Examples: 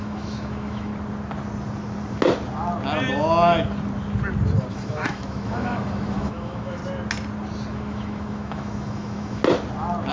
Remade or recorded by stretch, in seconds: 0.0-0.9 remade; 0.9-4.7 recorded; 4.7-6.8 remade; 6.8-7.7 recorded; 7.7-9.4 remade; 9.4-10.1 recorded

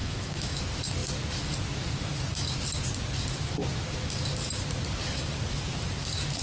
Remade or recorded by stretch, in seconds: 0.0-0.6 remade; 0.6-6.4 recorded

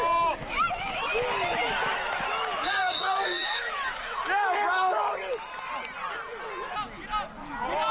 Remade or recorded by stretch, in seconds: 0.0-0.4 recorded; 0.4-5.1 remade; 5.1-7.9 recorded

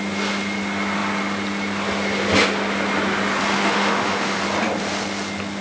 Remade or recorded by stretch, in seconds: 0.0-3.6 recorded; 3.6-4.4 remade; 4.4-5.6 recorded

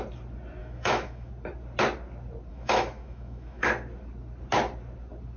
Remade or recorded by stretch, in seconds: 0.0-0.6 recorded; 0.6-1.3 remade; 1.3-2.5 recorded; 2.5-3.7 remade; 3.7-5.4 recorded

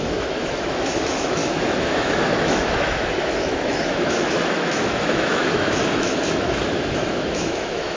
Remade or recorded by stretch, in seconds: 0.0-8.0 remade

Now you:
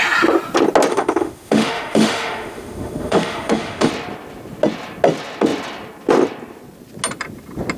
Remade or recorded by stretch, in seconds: 0.0-0.9 recorded; 0.9-3.9 remade; 3.9-7.8 recorded